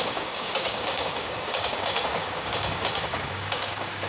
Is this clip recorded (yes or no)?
no